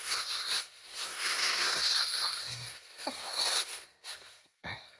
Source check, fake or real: fake